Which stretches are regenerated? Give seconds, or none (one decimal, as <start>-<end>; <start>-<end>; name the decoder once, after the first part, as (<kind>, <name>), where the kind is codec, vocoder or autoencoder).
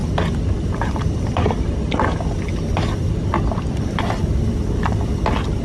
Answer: none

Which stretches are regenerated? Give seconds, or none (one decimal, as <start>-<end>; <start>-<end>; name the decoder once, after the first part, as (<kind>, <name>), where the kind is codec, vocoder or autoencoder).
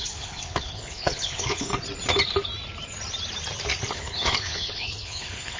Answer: 0.0-1.7 (codec, HILCodec); 3.9-5.6